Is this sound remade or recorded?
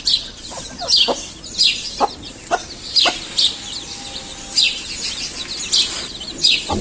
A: recorded